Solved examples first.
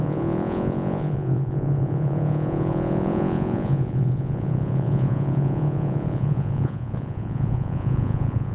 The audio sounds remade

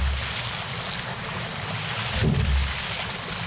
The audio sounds recorded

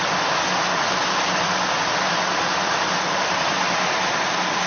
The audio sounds recorded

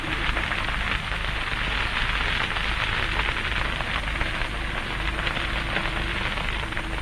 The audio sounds recorded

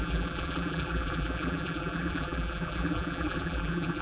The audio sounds remade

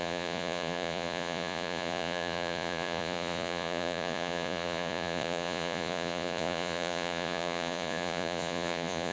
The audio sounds remade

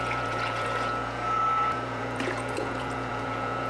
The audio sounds remade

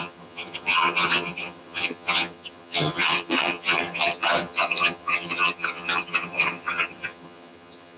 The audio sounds remade